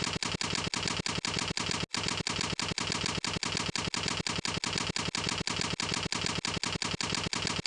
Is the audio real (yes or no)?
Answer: yes